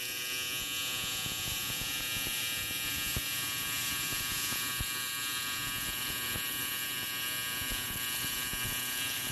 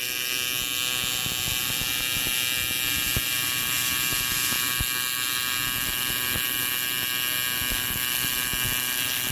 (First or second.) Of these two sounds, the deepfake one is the first